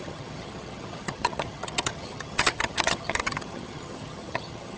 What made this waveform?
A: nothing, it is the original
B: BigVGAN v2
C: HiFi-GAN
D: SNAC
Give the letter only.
C